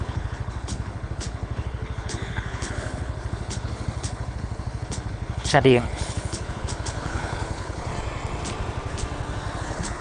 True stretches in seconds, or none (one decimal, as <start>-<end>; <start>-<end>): 7.9-9.6